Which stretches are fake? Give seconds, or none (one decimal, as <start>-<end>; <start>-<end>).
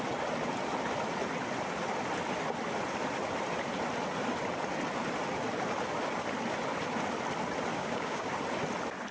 7.7-8.3